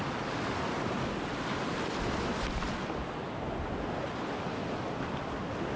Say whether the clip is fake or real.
real